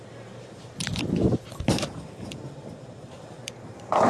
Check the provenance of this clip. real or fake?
fake